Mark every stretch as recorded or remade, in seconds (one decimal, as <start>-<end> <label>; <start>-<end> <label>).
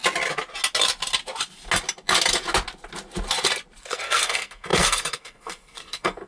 0.0-3.8 recorded; 3.8-6.3 remade